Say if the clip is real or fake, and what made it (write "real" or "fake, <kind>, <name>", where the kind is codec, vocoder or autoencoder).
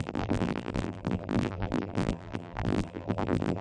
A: fake, vocoder, BigVGAN v2